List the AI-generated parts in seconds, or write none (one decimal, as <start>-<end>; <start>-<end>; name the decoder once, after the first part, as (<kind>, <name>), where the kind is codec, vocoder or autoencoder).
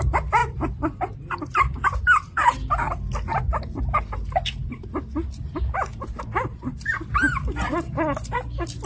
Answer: none